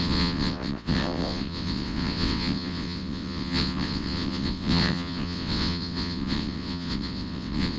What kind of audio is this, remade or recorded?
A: remade